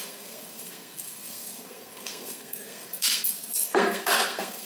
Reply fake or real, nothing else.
fake